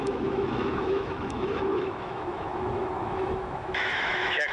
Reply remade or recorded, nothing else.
remade